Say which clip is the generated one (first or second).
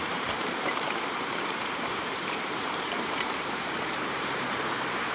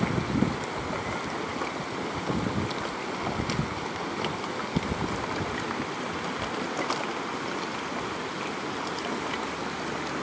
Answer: first